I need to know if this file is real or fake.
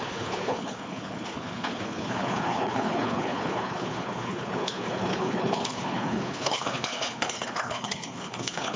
fake